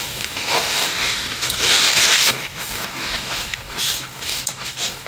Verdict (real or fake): fake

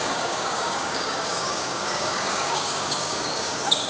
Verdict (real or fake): fake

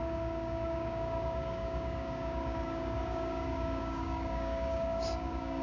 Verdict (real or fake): fake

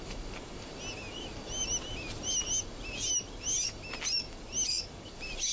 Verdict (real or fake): real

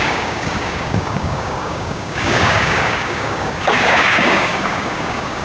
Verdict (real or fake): fake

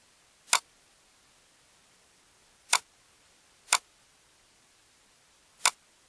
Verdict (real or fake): real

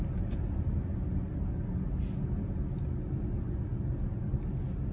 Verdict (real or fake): real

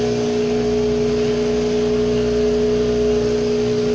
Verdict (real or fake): real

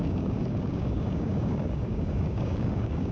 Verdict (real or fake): fake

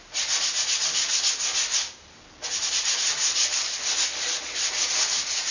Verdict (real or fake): real